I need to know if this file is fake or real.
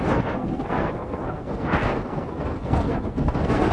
fake